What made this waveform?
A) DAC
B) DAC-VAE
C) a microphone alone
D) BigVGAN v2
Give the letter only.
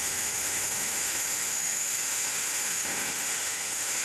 B